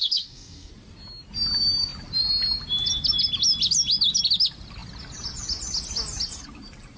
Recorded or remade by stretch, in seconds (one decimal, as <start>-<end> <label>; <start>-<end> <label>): 0.0-0.7 remade; 0.7-7.0 recorded